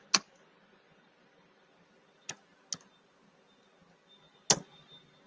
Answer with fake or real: real